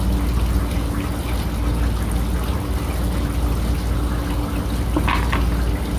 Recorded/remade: recorded